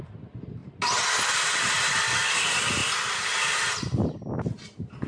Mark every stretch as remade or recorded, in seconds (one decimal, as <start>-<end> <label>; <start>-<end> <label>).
0.0-5.1 recorded